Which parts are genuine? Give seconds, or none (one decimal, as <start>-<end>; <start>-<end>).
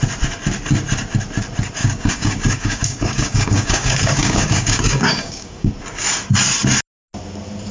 0.0-1.8; 5.7-7.7